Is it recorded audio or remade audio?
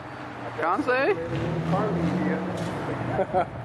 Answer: recorded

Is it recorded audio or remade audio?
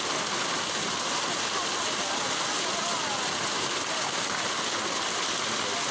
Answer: recorded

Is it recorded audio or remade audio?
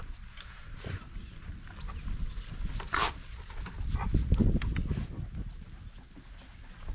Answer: recorded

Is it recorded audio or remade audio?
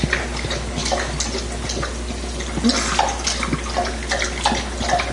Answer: recorded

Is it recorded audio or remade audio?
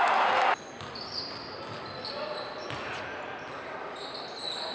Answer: recorded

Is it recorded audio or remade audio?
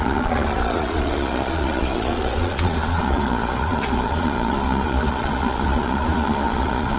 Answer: remade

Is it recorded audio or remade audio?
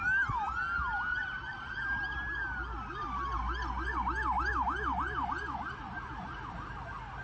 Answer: recorded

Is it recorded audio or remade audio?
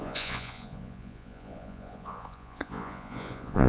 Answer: remade